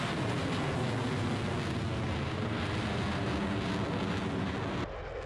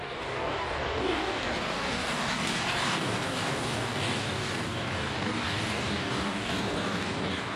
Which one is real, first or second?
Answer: first